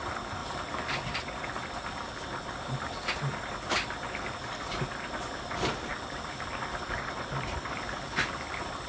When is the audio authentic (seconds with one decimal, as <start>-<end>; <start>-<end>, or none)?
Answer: 0.0-8.9